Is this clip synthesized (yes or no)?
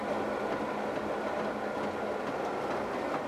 no